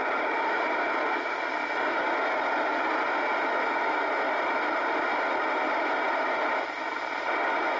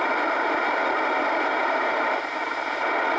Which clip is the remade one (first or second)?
second